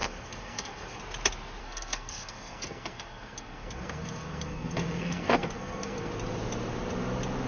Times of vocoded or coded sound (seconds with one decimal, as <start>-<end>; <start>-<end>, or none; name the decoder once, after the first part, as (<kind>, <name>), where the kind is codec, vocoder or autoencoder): 0.0-1.0 (codec, SNAC); 1.6-6.1

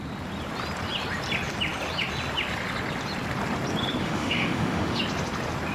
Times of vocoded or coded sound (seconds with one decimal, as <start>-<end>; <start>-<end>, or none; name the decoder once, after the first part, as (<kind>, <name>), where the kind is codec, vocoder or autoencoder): 4.0-5.0 (autoencoder, DAC-VAE)

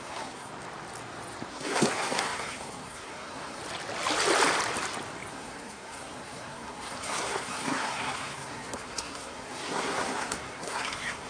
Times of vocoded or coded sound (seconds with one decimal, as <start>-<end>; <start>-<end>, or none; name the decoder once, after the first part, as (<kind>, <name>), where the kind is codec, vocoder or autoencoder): 0.0-0.5 (codec, SNAC); 1.5-3.6; 5.3-11.3

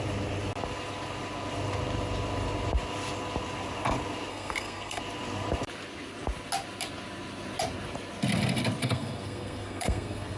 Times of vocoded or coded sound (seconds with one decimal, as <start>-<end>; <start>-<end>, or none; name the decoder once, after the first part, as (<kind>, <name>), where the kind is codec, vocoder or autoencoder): 4.3-5.0 (codec, SNAC); 8.8-10.4

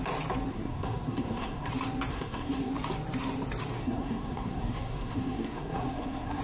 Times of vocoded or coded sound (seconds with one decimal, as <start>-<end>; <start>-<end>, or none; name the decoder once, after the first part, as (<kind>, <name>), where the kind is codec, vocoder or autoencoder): 0.5-1.7 (codec, SNAC); 2.1-2.7; 3.8-6.4

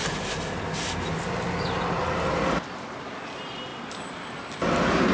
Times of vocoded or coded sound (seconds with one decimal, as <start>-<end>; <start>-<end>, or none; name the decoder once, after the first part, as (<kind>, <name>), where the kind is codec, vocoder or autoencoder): 3.7-4.4 (vocoder, BigVGAN v2)